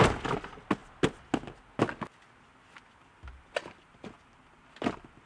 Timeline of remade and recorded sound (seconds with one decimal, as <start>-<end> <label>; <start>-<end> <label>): 0.0-5.3 recorded